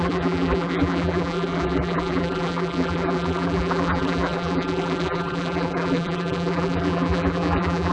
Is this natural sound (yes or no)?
no